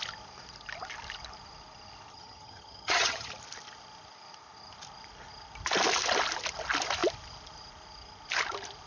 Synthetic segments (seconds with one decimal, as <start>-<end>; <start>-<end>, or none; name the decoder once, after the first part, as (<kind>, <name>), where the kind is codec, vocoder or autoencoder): 2.1-3.3 (vocoder, HiFi-GAN)